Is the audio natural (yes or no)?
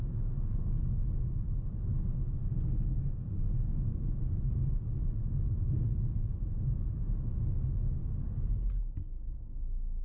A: yes